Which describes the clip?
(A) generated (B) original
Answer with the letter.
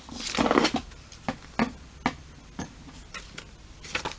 B